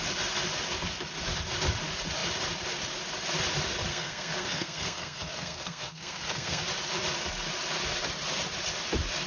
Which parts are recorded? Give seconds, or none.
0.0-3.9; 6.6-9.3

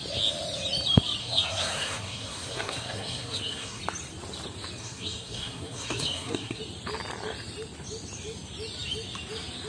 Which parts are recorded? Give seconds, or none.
0.0-1.2; 3.8-4.8; 6.6-9.7

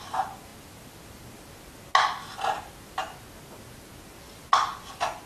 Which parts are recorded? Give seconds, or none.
0.0-5.3

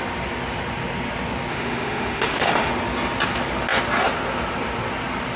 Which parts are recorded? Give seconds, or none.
0.0-1.5; 2.7-5.4

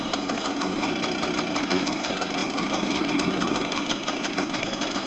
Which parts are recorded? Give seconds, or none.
0.9-1.6